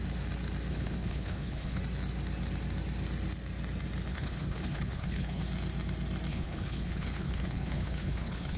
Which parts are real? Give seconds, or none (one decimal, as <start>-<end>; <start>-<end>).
0.0-0.7; 1.8-4.1; 5.4-6.3